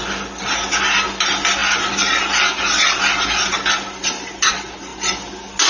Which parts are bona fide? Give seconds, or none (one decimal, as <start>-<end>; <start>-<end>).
0.0-5.7